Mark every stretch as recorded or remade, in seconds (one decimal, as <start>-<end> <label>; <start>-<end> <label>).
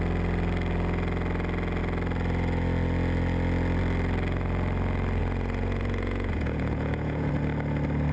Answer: 0.0-5.2 recorded; 5.2-7.3 remade; 7.3-8.1 recorded